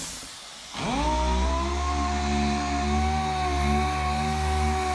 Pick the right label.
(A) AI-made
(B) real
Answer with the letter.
B